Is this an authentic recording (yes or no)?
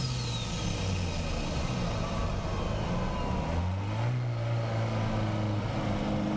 yes